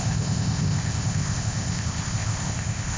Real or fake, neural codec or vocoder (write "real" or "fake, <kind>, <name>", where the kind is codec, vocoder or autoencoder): fake, codec, ZipCodec